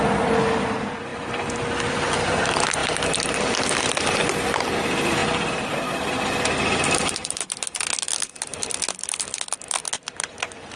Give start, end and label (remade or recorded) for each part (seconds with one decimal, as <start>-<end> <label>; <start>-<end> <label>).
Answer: 0.0-10.8 recorded